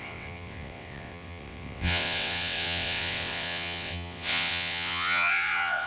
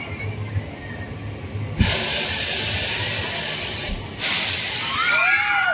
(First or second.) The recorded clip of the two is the second